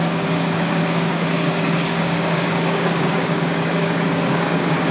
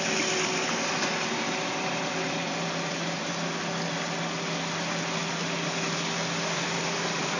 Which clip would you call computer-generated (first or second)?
first